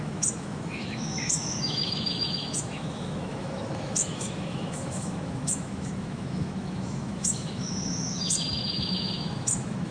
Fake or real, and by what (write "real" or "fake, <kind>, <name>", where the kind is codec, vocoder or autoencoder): fake, autoencoder, DAC-VAE